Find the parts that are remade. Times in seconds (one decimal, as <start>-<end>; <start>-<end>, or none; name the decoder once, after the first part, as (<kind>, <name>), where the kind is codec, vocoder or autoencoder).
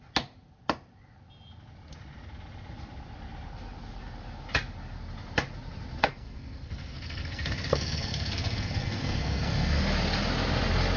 6.0-9.8 (codec, SNAC)